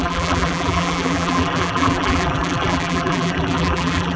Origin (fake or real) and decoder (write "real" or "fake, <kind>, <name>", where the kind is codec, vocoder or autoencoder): fake, vocoder, BigVGAN v2